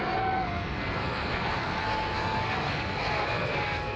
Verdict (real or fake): fake